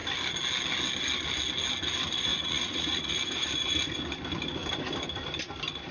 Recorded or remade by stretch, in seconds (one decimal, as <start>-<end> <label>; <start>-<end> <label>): 0.0-2.3 recorded; 2.3-3.2 remade; 3.2-5.9 recorded